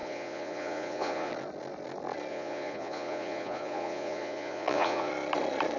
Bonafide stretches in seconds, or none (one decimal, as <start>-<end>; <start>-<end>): 1.3-2.3; 5.1-5.8